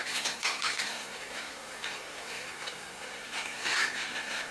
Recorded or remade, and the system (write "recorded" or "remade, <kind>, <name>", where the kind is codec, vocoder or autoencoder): remade, codec, SNAC